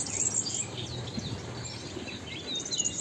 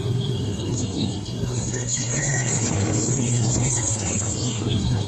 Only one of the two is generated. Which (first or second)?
second